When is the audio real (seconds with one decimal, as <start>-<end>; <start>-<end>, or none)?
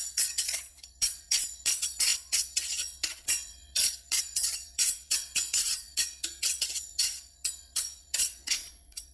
none